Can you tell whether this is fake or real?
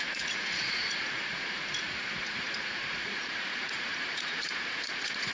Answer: fake